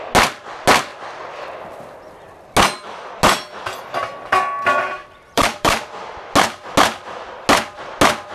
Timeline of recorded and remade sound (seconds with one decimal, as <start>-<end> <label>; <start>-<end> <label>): 0.0-5.0 recorded; 5.0-6.1 remade; 6.1-8.3 recorded